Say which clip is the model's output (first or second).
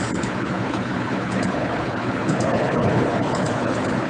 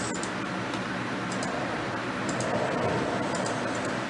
first